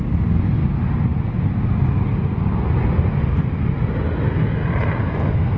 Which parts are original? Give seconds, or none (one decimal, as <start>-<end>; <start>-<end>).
0.0-5.6